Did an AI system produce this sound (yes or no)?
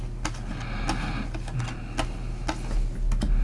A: no